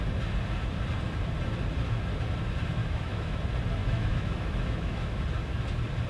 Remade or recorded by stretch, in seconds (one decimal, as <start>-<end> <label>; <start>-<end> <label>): 0.0-2.8 recorded; 2.8-3.4 remade; 3.4-3.8 recorded; 3.8-5.2 remade; 5.2-6.1 recorded